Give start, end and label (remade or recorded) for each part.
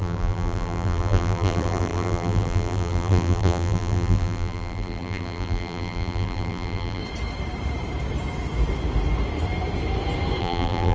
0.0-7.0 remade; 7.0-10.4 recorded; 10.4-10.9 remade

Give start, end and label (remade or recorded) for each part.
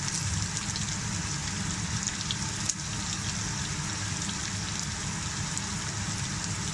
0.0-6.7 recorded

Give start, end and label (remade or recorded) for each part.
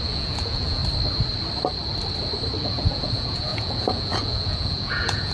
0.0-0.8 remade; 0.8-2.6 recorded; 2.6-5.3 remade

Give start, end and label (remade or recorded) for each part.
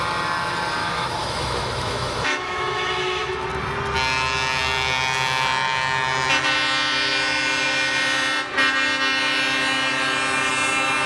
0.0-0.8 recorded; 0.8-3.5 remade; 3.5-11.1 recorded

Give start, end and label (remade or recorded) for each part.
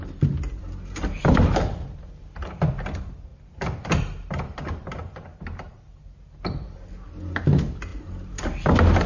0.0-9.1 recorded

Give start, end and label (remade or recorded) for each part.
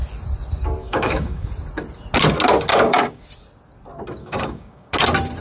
0.0-0.8 recorded; 0.8-1.5 remade; 1.5-2.7 recorded; 2.7-3.2 remade; 3.2-4.2 recorded; 4.2-4.9 remade; 4.9-5.4 recorded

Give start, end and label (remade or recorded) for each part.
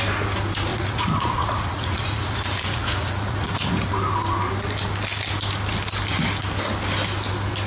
0.0-0.7 recorded; 0.7-3.5 remade; 3.5-7.7 recorded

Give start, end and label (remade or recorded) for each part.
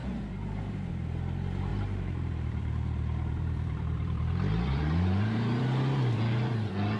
0.0-0.9 remade; 0.9-1.7 recorded; 1.7-5.6 remade; 5.6-7.0 recorded